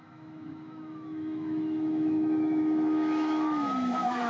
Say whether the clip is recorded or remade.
remade